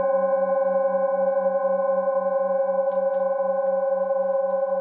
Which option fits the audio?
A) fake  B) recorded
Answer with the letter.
B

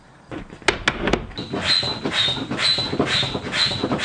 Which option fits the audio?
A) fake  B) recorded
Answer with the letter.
B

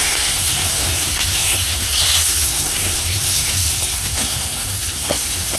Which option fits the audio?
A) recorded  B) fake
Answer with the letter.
B